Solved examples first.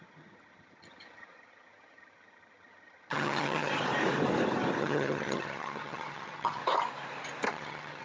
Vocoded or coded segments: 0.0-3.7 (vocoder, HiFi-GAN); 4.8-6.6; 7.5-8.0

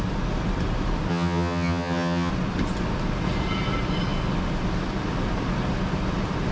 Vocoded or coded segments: 1.1-2.3 (vocoder, HiFi-GAN)

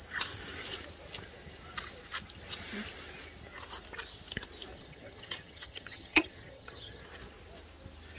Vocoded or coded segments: 4.7-7.0 (vocoder, HiFi-GAN)

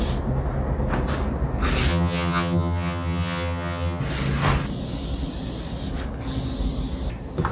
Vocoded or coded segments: 1.9-4.0 (vocoder, HiFi-GAN)

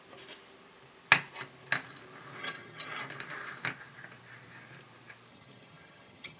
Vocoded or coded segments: 2.4-3.0 (vocoder, HiFi-GAN); 5.3-6.4

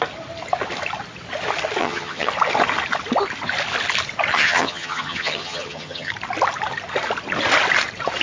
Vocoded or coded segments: 1.8-2.3 (vocoder, HiFi-GAN); 4.3-6.1